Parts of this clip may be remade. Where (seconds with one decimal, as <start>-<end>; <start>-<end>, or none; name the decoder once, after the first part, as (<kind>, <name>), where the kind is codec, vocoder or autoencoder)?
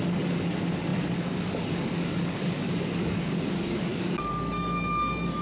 0.0-5.4 (codec, DAC)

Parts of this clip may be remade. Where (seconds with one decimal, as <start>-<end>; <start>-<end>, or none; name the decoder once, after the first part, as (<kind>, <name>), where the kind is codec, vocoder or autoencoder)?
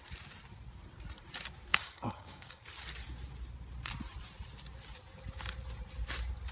1.7-2.6 (codec, DAC)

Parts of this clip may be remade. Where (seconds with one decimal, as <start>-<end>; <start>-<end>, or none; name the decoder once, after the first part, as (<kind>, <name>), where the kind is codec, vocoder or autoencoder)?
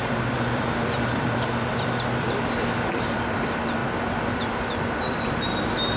0.0-3.8 (vocoder, BigVGAN v2); 4.3-6.0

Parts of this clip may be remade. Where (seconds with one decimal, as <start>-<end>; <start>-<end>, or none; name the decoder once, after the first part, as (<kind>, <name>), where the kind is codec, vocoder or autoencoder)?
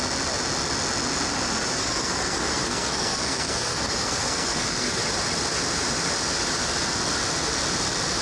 1.8-5.0 (codec, SNAC)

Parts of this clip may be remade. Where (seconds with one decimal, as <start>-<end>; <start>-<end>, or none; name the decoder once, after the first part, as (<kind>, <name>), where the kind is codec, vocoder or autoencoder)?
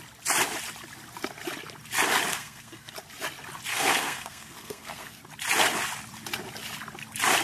2.3-2.9 (codec, SNAC); 3.7-5.2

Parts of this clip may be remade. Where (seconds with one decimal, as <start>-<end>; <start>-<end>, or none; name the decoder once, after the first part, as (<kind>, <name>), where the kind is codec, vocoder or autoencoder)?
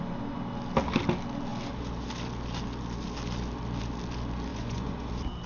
4.5-5.1 (vocoder, Vocos)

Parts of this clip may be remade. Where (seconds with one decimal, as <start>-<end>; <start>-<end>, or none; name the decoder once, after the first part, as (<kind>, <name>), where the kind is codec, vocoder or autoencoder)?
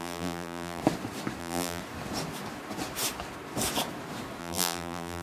0.0-0.8 (vocoder, BigVGAN v2); 1.4-1.8; 4.4-5.2